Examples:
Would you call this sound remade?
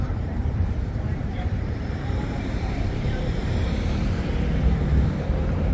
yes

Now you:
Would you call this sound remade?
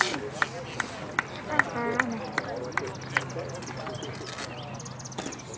no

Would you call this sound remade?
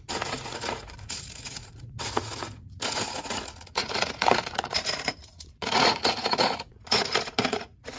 yes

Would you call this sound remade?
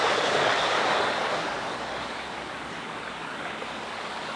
yes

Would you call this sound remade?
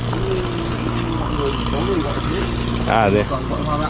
no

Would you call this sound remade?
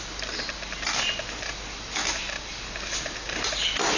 no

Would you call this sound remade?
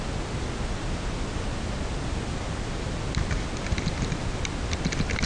no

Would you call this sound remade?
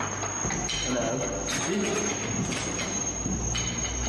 no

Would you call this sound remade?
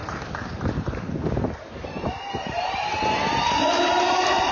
yes